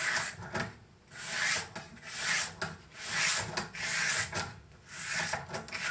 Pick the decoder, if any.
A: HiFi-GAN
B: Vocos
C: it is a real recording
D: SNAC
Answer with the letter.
C